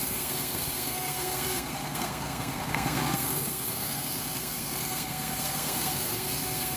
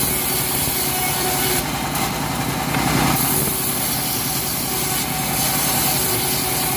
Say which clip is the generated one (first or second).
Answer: first